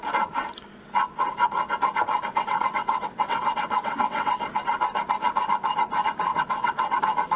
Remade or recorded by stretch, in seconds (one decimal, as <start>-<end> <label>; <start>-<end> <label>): 0.0-2.3 recorded; 2.3-4.4 remade; 4.4-6.3 recorded; 6.3-7.0 remade; 7.0-7.4 recorded